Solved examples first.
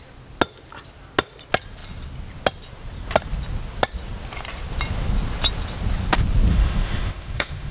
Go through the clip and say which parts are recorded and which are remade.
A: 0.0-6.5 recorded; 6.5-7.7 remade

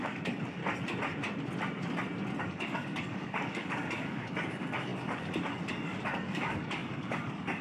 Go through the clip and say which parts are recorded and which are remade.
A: 0.0-0.6 remade; 0.6-2.4 recorded; 2.4-7.6 remade

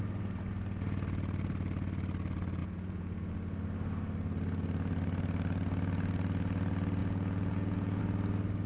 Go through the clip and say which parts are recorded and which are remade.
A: 0.0-2.6 recorded; 2.6-3.3 remade; 3.3-7.0 recorded; 7.0-8.0 remade; 8.0-8.7 recorded

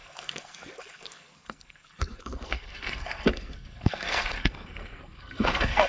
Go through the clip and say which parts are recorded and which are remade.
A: 0.0-5.9 remade

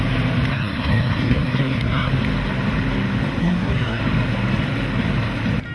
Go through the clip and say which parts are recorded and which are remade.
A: 0.0-0.5 recorded; 0.5-2.1 remade; 2.1-3.4 recorded; 3.4-4.0 remade; 4.0-5.7 recorded

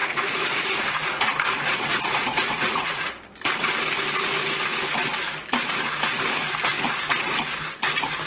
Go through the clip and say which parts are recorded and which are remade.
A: 0.0-3.1 remade; 3.1-8.3 recorded

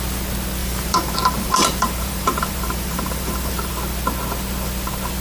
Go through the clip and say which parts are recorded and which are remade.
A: 0.0-0.6 recorded; 0.6-3.7 remade; 3.7-5.2 recorded